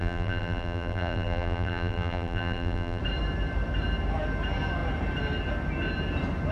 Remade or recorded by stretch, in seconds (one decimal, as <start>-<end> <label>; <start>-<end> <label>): 0.0-3.0 remade; 3.0-6.5 recorded